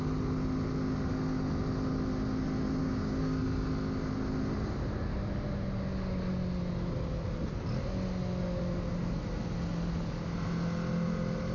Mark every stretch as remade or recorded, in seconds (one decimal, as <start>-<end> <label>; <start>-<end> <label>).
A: 0.0-2.8 recorded; 2.8-3.4 remade; 3.4-11.5 recorded